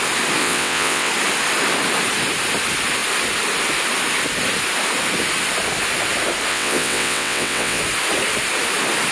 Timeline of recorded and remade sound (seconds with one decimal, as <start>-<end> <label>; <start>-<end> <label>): 0.0-0.4 recorded; 0.4-1.1 remade; 1.1-6.5 recorded; 6.5-7.8 remade; 7.8-9.1 recorded